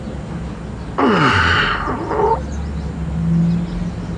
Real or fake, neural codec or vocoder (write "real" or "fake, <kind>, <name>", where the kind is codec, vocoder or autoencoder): real